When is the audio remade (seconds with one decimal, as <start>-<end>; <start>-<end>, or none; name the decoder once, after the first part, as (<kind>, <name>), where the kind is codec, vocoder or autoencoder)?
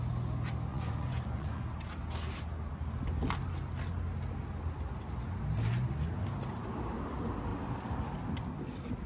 0.7-1.6 (vocoder, Vocos)